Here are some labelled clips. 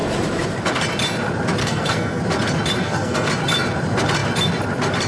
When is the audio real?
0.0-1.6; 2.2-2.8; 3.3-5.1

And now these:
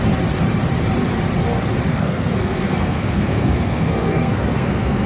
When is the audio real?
0.0-1.9